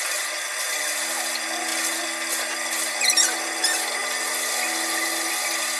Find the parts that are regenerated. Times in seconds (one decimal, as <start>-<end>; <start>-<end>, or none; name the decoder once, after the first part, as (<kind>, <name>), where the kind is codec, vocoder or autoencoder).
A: none